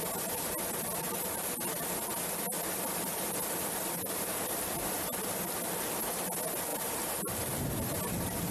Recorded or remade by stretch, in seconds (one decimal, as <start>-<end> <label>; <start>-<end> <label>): 0.0-6.7 recorded; 6.7-7.3 remade; 7.3-8.5 recorded